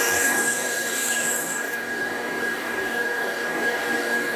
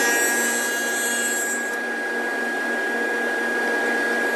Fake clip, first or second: first